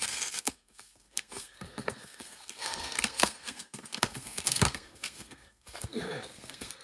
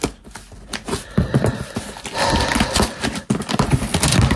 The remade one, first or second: first